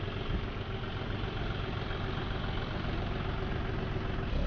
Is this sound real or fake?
real